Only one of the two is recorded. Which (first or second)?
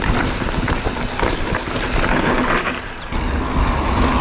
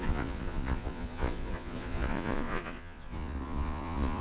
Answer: first